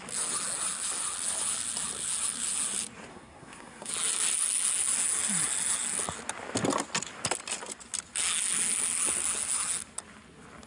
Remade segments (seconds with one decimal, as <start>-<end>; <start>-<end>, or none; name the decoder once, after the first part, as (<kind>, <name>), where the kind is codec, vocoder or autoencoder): 3.1-3.9 (codec, SNAC)